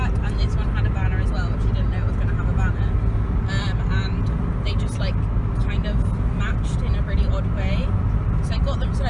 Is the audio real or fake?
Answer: real